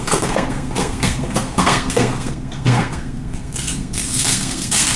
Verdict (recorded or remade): remade